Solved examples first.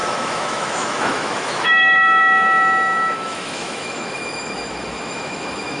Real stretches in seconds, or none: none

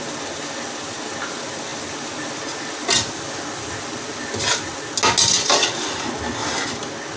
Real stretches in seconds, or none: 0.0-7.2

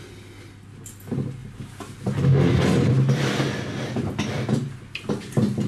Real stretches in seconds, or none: 0.0-1.4; 4.8-5.7